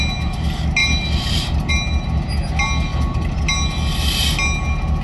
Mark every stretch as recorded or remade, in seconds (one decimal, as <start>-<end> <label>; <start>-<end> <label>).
0.0-0.8 recorded; 0.8-1.7 remade; 1.7-2.9 recorded; 2.9-3.4 remade; 3.4-5.0 recorded